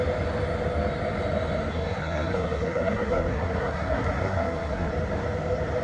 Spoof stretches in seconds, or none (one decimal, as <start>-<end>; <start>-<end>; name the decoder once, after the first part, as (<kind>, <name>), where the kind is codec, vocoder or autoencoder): 1.7-4.9 (codec, SNAC)